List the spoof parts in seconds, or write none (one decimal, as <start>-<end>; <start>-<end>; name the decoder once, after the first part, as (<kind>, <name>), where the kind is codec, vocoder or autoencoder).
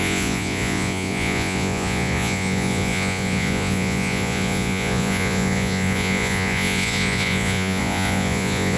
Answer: 0.0-8.8 (vocoder, Vocos)